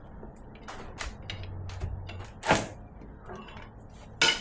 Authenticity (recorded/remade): recorded